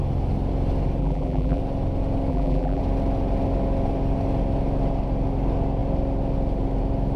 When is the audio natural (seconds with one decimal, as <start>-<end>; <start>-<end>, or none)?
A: 0.0-1.0; 1.6-2.3; 2.8-7.2